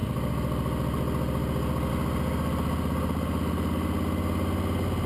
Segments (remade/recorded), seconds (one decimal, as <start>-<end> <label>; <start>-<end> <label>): 0.0-5.1 recorded